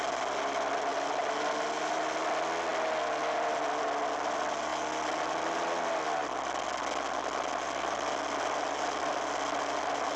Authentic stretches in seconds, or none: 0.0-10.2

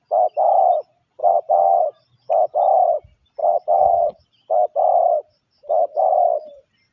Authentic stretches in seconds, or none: 0.0-1.2; 1.8-3.4; 4.2-6.9

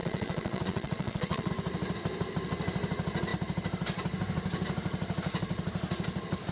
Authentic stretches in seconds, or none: 1.5-6.5

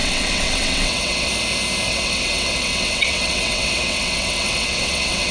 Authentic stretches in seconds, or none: 1.3-1.9

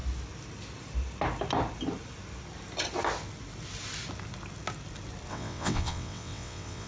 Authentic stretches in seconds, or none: 0.0-5.3

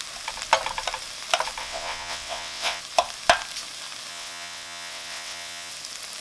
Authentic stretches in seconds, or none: 0.0-1.6; 2.8-4.1; 5.7-6.2

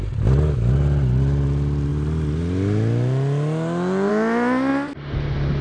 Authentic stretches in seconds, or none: 0.0-5.6